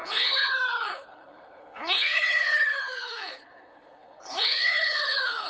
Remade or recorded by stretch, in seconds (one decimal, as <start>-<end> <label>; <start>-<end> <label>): 0.0-5.5 remade